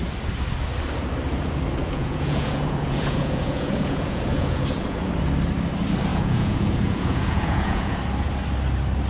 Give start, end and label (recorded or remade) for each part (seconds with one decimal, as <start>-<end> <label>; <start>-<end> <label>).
0.0-1.8 recorded; 1.8-5.1 remade; 5.1-6.1 recorded; 6.1-8.0 remade; 8.0-9.1 recorded